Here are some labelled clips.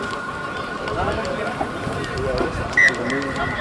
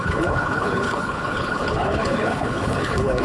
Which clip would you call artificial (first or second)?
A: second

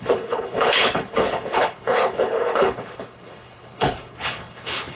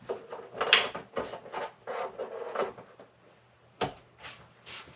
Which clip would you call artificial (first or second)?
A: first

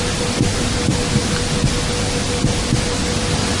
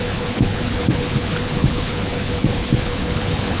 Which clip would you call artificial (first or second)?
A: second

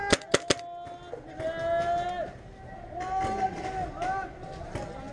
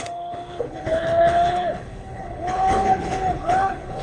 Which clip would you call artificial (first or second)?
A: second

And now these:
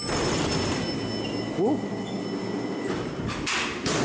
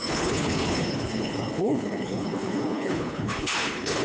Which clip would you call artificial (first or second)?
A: second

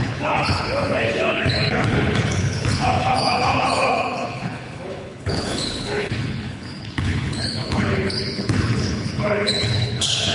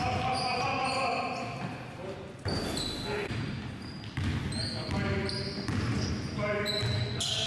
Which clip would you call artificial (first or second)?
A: first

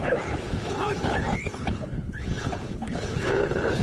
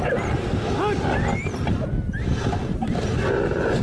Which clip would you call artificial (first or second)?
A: first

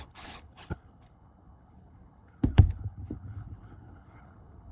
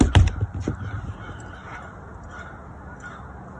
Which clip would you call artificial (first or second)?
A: first